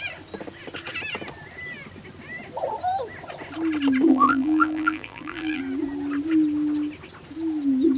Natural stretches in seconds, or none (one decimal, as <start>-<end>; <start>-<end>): 0.0-4.1; 5.6-8.0